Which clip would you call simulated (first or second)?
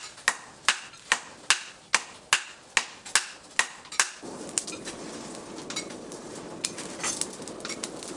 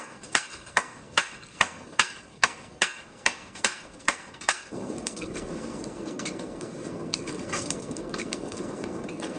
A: second